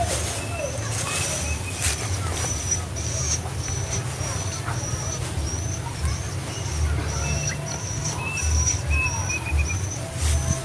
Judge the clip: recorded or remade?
remade